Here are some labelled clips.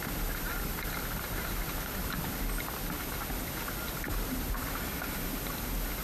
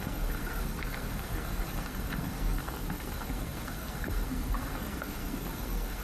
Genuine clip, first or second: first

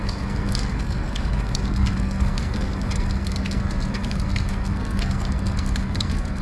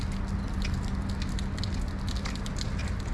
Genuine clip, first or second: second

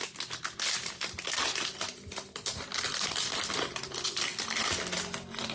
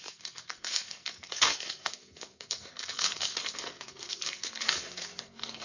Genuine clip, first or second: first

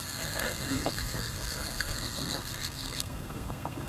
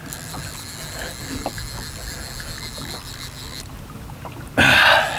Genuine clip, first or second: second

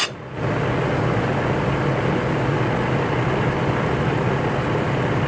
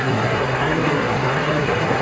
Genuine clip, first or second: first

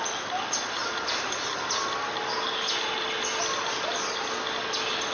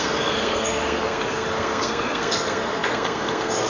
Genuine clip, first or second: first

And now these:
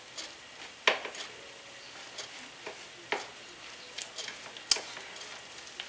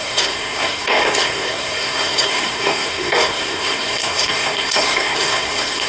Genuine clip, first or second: first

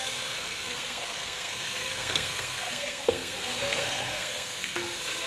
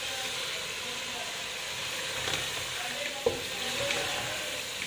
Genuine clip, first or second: second